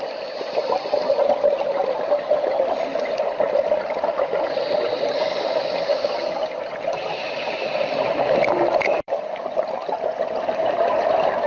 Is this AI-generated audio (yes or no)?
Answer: no